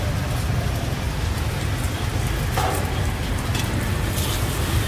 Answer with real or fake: real